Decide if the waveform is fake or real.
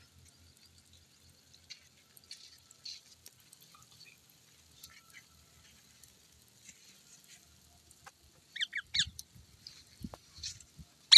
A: real